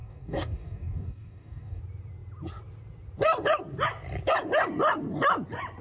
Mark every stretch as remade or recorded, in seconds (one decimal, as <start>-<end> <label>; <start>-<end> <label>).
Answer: 0.0-1.8 remade; 1.8-5.8 recorded